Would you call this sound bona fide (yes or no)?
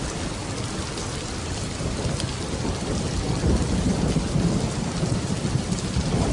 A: yes